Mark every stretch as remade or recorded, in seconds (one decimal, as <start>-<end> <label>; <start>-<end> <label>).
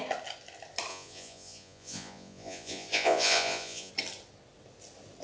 0.0-0.9 recorded; 0.9-3.9 remade; 3.9-5.2 recorded